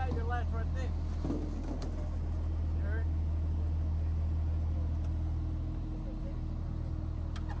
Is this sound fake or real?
real